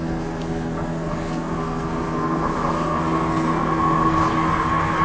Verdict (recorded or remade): remade